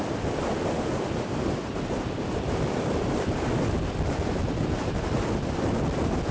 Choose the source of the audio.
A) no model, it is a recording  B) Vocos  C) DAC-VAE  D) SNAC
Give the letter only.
A